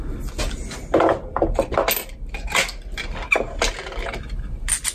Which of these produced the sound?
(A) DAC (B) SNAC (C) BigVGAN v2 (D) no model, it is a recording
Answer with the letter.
D